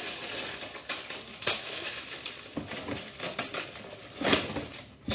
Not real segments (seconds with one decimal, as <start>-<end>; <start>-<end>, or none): 1.3-2.3